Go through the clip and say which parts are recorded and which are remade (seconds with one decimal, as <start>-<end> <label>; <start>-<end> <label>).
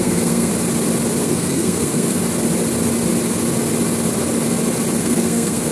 0.0-0.5 remade; 0.5-1.2 recorded; 1.2-2.2 remade; 2.2-5.0 recorded; 5.0-5.7 remade